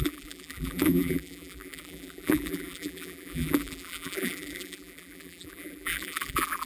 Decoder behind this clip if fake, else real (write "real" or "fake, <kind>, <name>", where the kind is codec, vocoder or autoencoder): fake, vocoder, BigVGAN v2